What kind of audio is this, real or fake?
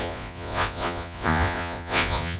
fake